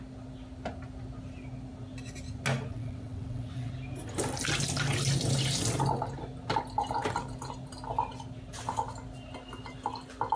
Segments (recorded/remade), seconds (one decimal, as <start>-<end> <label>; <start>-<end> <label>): 0.0-2.7 recorded; 2.7-3.7 remade; 3.7-10.4 recorded